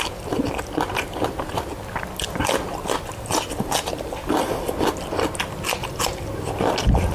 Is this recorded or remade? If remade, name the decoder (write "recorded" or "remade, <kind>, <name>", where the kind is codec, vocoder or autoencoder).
recorded